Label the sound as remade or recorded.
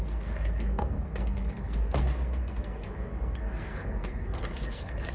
remade